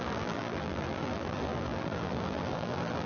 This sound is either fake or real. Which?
fake